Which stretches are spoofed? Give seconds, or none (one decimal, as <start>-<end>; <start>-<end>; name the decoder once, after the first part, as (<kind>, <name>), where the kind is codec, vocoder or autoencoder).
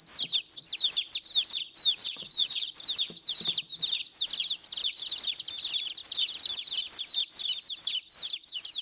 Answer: 2.0-2.7 (vocoder, Vocos)